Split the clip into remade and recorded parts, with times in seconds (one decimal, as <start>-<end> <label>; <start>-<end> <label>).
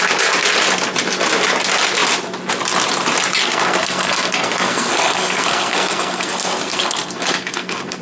0.0-3.4 recorded; 3.4-8.0 remade